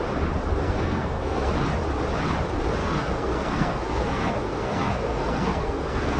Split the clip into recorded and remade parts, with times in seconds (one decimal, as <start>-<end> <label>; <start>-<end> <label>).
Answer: 0.0-0.6 recorded; 0.6-1.5 remade; 1.5-2.8 recorded; 2.8-6.2 remade